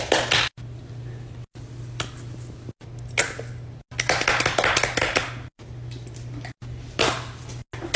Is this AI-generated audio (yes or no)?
no